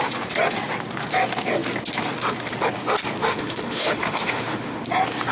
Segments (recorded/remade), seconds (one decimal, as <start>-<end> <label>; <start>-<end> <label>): 0.0-3.2 recorded; 3.2-4.8 remade; 4.8-5.3 recorded